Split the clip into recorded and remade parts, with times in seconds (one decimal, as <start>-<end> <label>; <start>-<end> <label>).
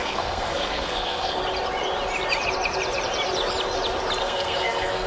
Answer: 0.0-1.4 remade; 1.4-4.2 recorded; 4.2-5.1 remade